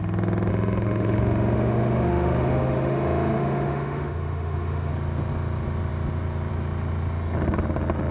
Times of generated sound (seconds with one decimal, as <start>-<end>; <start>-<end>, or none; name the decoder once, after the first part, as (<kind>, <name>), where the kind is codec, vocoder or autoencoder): 0.5-4.9 (autoencoder, DAC-VAE)